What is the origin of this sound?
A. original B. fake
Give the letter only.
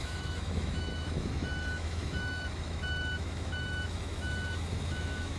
B